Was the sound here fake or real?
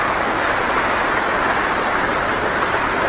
real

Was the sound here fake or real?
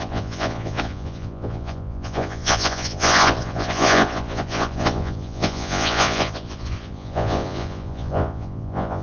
fake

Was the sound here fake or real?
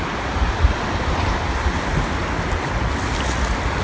real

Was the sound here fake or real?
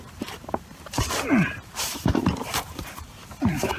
fake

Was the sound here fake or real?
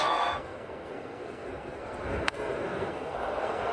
fake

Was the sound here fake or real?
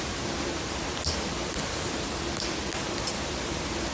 real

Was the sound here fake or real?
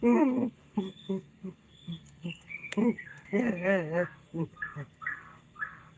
fake